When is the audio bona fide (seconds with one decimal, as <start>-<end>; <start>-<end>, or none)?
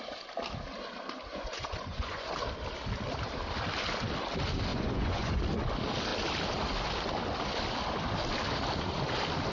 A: 0.0-1.3; 2.3-4.7; 5.4-9.5